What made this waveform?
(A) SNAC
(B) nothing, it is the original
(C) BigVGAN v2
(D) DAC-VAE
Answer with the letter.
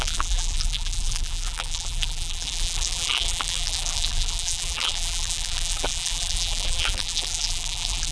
C